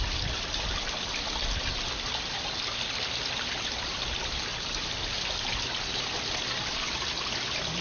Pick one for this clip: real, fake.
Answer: real